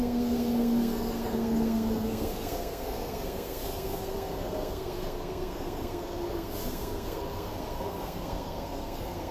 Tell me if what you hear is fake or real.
fake